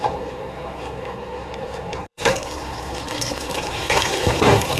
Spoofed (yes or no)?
yes